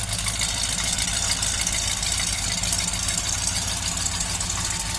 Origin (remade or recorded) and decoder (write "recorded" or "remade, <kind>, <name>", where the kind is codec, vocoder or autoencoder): recorded